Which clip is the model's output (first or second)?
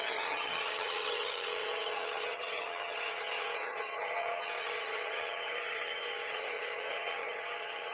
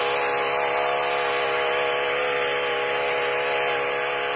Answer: first